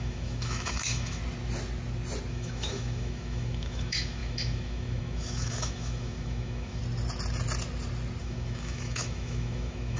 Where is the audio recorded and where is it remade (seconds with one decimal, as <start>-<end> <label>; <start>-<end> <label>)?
0.0-1.2 remade; 1.2-2.3 recorded; 2.3-6.8 remade; 6.8-8.2 recorded; 8.2-10.0 remade